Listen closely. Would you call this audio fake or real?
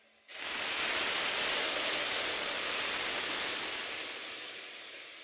real